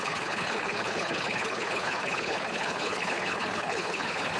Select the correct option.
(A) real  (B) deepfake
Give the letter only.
B